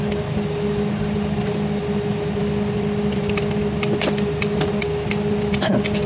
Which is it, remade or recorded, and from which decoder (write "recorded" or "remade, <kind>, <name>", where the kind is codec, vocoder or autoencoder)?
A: recorded